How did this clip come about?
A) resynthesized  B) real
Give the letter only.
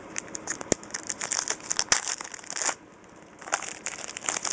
B